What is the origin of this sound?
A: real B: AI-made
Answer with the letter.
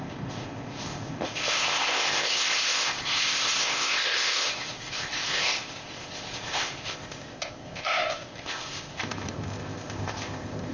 B